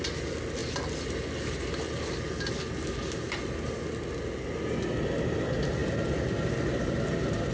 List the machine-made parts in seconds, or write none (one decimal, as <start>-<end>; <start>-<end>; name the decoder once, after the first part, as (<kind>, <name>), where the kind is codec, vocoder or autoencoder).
none